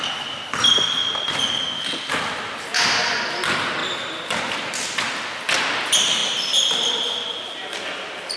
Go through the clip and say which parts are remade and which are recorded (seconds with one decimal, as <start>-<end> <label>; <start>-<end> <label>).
0.0-8.4 recorded